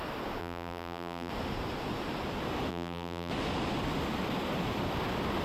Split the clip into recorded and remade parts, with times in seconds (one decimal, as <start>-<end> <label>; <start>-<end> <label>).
0.0-0.4 recorded; 0.4-1.3 remade; 1.3-2.7 recorded; 2.7-3.3 remade; 3.3-5.4 recorded